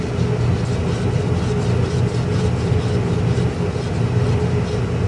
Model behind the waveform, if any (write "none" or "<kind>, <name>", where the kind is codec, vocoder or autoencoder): none